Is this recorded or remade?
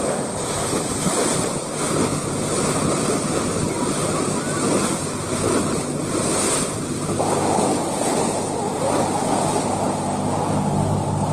recorded